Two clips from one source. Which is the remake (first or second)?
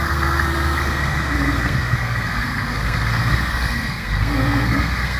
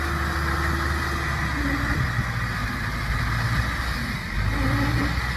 first